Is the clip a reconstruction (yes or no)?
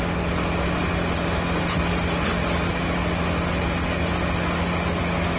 no